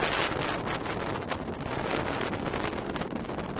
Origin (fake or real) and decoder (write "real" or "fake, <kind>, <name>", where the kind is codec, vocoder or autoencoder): real